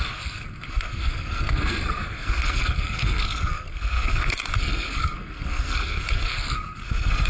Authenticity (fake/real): fake